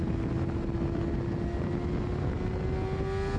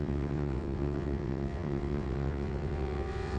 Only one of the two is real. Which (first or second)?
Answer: first